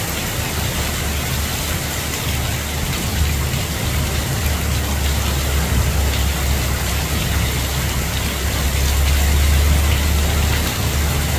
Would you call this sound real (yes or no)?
yes